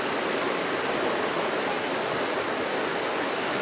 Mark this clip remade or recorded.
recorded